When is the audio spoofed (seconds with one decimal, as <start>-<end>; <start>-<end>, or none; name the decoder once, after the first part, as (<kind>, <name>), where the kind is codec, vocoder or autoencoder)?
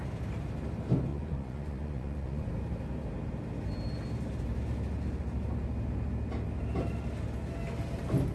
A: 1.1-2.5 (vocoder, Vocos)